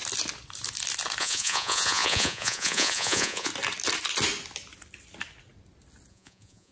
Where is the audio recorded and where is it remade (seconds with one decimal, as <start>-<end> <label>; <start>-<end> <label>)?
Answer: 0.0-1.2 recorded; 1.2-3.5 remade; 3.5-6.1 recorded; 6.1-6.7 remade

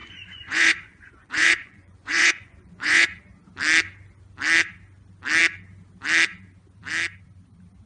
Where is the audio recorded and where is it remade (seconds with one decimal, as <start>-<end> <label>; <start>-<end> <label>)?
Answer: 0.0-3.2 remade; 3.2-7.9 recorded

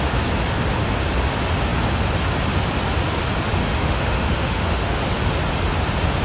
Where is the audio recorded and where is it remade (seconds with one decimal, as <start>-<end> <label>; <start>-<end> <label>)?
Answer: 0.0-3.6 recorded; 3.6-5.0 remade; 5.0-6.2 recorded

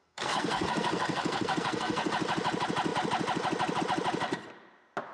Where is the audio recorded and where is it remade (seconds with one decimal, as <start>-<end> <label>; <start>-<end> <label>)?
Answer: 0.0-2.1 remade; 2.1-5.1 recorded